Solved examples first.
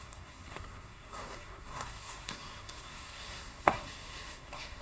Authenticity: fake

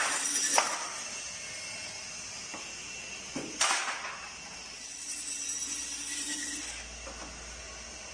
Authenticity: real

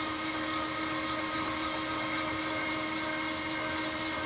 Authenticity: real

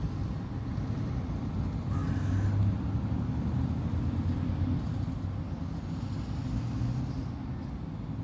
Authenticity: real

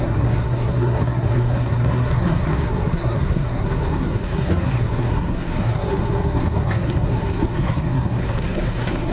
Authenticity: fake